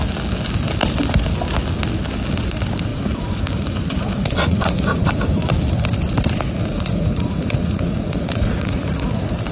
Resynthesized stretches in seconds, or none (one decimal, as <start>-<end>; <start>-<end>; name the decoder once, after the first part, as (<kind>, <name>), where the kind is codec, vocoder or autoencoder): 2.9-5.1 (vocoder, Vocos); 6.6-9.1